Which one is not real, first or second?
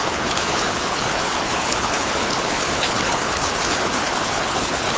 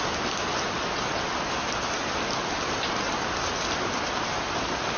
first